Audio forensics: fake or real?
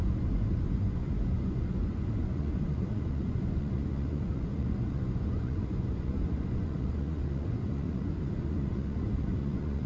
fake